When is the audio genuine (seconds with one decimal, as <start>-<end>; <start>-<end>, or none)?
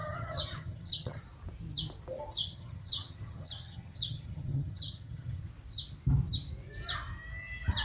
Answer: 1.2-2.4; 5.4-7.8